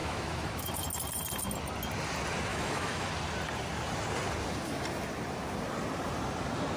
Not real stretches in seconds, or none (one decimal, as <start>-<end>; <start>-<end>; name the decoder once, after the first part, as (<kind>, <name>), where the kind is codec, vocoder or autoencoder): 0.0-0.7 (autoencoder, DAC-VAE); 2.5-3.1